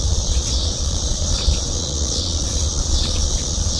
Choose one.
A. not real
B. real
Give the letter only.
A